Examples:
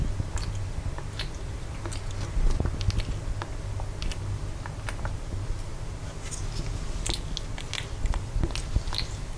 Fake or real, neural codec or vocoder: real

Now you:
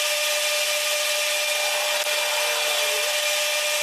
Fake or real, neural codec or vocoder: real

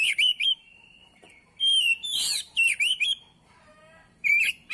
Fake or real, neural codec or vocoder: fake, vocoder, BigVGAN v2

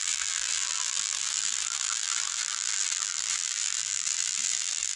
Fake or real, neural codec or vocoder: fake, vocoder, BigVGAN v2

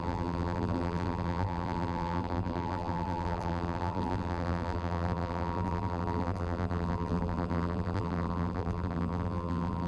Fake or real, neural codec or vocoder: fake, vocoder, BigVGAN v2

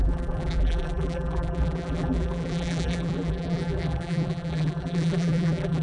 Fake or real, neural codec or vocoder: fake, vocoder, BigVGAN v2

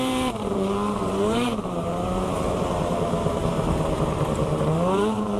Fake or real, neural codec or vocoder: fake, vocoder, BigVGAN v2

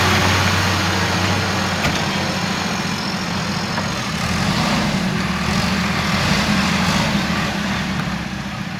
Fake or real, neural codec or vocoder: real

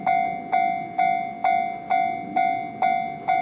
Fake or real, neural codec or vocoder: real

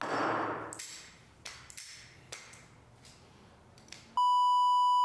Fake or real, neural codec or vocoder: real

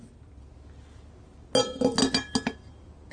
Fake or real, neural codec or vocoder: real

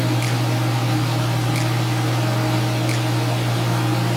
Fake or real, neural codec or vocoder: real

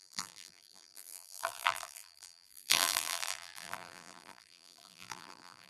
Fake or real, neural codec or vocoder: fake, vocoder, BigVGAN v2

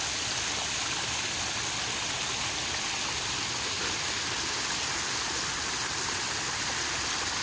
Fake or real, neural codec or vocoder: real